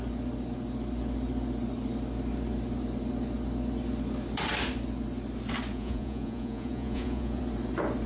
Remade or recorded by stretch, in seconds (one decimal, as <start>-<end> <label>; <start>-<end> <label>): 0.0-5.7 recorded; 5.7-7.4 remade; 7.4-8.1 recorded

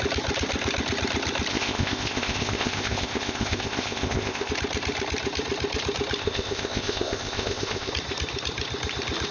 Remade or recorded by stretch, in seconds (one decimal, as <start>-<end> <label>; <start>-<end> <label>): 0.0-1.5 recorded; 1.5-4.5 remade; 4.5-6.2 recorded; 6.2-7.9 remade; 7.9-9.3 recorded

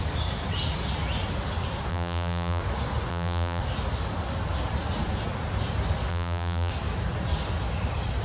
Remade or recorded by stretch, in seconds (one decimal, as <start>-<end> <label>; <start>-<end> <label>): 0.0-1.9 recorded; 1.9-2.6 remade; 2.6-3.1 recorded; 3.1-3.6 remade; 3.6-6.1 recorded; 6.1-6.7 remade; 6.7-8.2 recorded

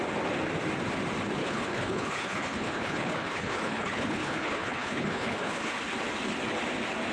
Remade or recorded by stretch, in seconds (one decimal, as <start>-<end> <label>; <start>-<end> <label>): 0.0-1.4 recorded; 1.4-5.7 remade; 5.7-7.1 recorded

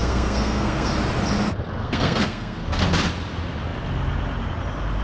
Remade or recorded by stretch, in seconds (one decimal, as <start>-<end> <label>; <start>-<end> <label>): 0.0-0.9 remade; 0.9-1.8 recorded; 1.8-2.6 remade; 2.6-5.0 recorded

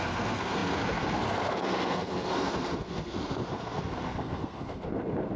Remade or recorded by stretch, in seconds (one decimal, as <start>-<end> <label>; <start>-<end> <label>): 0.0-5.4 remade

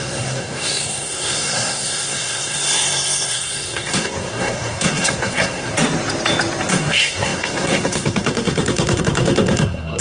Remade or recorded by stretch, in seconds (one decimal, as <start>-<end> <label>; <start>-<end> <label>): 0.0-5.7 remade; 5.7-6.7 recorded; 6.7-10.0 remade